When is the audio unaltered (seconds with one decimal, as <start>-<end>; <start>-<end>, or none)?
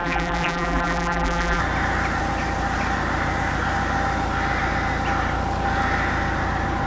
1.6-6.9